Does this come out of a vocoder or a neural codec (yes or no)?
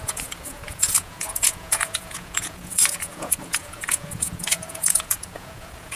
yes